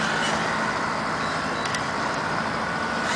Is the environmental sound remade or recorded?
recorded